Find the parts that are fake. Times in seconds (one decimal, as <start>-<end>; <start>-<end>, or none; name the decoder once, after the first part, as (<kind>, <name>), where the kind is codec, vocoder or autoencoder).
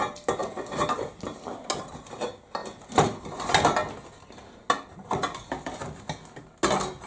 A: none